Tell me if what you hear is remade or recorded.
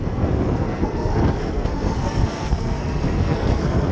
remade